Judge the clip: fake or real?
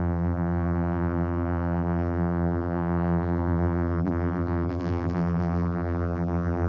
fake